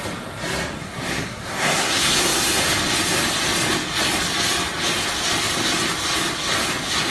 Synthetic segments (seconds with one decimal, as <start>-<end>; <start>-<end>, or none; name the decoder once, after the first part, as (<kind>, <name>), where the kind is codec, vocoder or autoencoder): 0.8-2.4 (codec, SNAC)